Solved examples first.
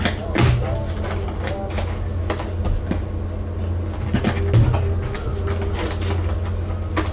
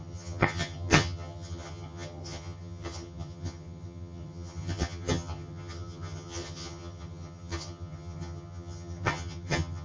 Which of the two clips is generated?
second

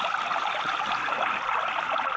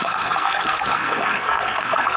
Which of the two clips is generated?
second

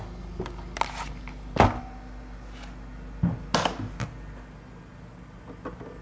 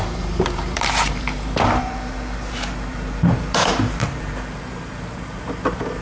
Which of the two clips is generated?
second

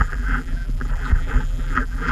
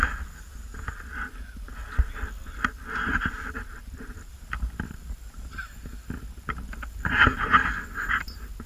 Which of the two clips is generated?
first